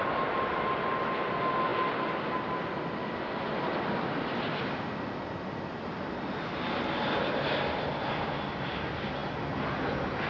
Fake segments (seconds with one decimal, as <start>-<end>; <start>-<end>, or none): none